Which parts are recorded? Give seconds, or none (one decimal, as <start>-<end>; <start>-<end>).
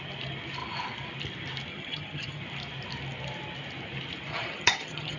0.0-1.7; 2.4-4.3